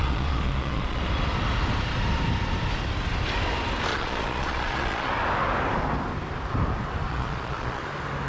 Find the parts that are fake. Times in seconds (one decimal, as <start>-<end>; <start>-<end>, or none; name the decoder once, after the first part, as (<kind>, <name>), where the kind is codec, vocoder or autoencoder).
0.0-1.0 (vocoder, Vocos); 3.9-5.1; 7.1-7.8